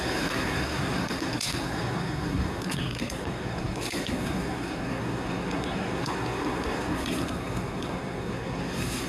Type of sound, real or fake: fake